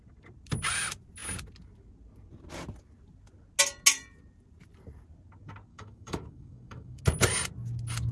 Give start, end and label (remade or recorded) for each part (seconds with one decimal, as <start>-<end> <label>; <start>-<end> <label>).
0.0-5.7 recorded; 5.7-7.0 remade; 7.0-8.1 recorded